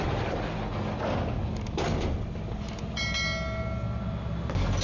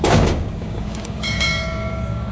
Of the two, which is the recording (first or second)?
first